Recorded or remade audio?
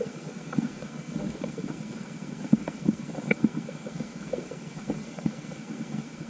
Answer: remade